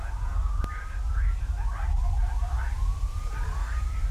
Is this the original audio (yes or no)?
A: yes